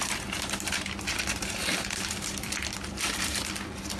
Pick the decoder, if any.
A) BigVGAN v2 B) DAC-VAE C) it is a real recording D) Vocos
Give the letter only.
A